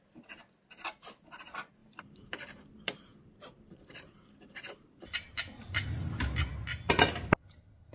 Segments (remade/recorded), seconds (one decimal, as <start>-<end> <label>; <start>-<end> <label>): 0.0-1.8 recorded; 1.8-5.7 remade; 5.7-7.9 recorded